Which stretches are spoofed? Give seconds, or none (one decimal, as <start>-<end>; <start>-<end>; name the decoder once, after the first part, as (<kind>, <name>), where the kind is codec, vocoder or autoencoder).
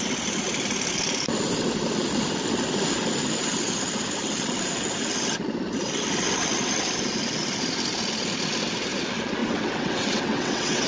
9.4-10.9 (vocoder, WaveNeXt)